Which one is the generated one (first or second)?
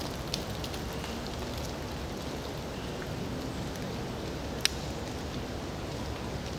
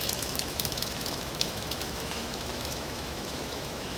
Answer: second